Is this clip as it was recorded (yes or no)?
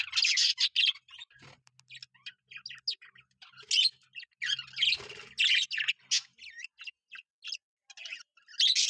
yes